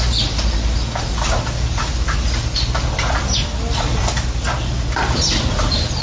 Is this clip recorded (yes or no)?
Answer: yes